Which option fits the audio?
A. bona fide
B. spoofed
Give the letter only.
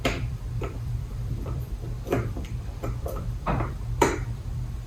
B